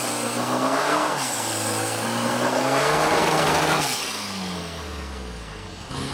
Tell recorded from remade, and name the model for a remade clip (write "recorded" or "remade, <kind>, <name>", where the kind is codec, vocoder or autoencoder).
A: remade, codec, SNAC